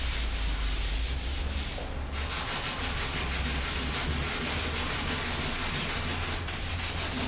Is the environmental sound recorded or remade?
recorded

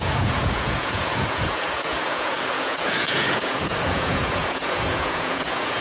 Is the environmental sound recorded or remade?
remade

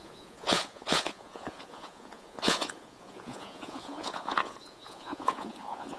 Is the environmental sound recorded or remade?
remade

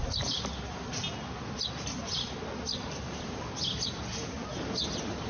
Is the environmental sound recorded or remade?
recorded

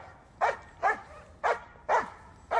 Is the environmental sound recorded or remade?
recorded